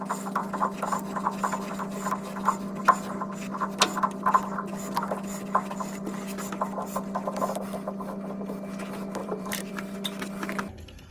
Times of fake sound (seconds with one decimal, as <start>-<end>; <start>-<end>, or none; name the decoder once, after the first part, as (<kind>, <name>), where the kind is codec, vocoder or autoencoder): 9.2-9.7 (vocoder, BigVGAN v2)